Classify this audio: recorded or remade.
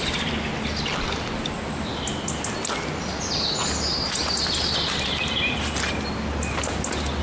recorded